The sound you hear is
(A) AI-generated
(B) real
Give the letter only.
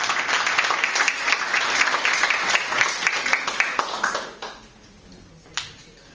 B